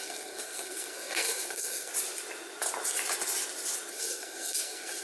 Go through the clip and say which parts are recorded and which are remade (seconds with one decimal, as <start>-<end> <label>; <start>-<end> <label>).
0.0-1.9 remade; 1.9-3.9 recorded; 3.9-5.0 remade